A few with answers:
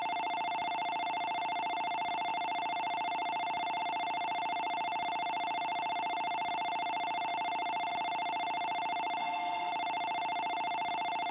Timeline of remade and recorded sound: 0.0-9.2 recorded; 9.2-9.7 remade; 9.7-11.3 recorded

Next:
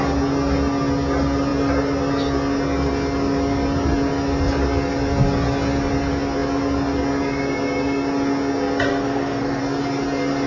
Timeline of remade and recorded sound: 0.0-8.9 recorded; 8.9-9.6 remade; 9.6-10.5 recorded